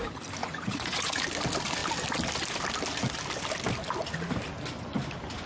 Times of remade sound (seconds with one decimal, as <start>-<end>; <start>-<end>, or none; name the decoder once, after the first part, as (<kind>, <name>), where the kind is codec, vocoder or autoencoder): 0.4-1.2 (vocoder, Vocos)